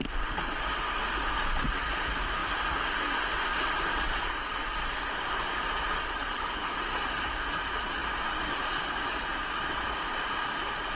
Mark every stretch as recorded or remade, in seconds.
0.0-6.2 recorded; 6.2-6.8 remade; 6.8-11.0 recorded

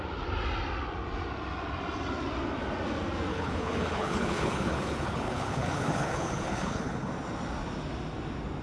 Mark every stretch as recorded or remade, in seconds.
0.0-3.3 recorded; 3.3-7.1 remade; 7.1-8.6 recorded

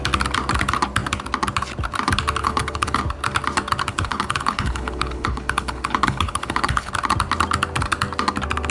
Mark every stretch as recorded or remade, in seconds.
0.0-2.4 recorded; 2.4-3.0 remade; 3.0-3.9 recorded; 3.9-6.9 remade; 6.9-8.7 recorded